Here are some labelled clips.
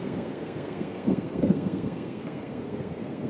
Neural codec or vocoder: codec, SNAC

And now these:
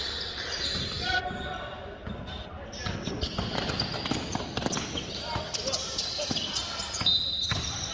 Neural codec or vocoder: none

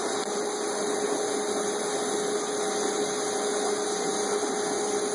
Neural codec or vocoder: none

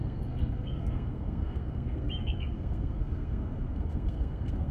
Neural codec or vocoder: codec, SNAC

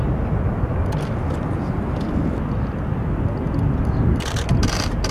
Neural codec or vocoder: none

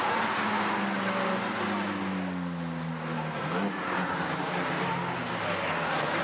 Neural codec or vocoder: none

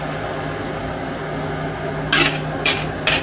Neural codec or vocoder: none